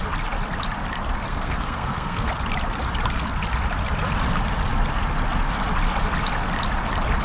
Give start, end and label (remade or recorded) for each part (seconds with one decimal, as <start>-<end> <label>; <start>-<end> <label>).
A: 0.0-1.3 recorded; 1.3-2.3 remade; 2.3-7.2 recorded